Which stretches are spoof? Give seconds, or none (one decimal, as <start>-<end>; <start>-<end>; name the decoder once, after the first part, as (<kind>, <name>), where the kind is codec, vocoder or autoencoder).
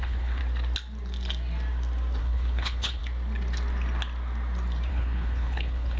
0.0-0.4 (codec, HILCodec); 2.2-3.0; 4.9-6.0